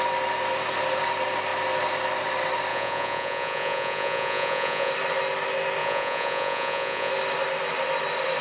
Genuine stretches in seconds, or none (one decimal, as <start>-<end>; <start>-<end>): 0.0-2.7; 4.9-5.8; 7.1-8.4